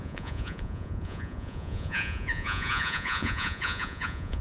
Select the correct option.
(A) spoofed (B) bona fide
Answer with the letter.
A